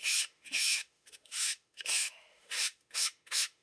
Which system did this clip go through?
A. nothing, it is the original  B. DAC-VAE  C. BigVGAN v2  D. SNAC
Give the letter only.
B